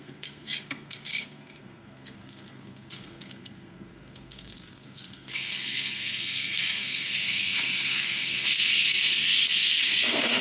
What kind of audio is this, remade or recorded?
remade